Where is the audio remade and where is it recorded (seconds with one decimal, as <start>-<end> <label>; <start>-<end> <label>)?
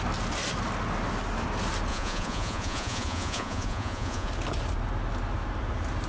0.0-1.9 recorded; 1.9-4.3 remade; 4.3-6.1 recorded